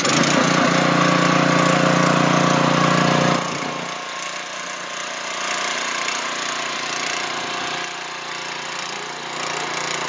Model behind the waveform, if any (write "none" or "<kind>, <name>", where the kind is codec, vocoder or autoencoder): none